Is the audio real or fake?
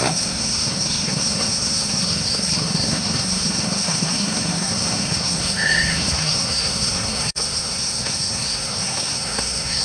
fake